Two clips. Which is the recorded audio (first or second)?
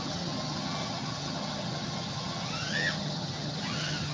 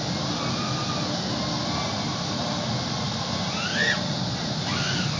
second